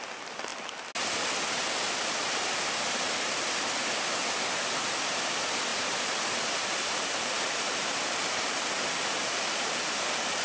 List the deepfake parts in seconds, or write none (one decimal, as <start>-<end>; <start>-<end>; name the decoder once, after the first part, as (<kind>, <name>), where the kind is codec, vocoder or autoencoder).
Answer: 5.7-10.4 (vocoder, BigVGAN v2)